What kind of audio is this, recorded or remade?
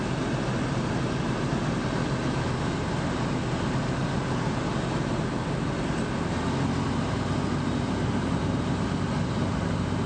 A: recorded